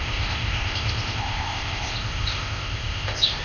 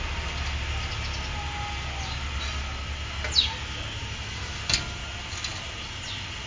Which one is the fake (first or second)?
first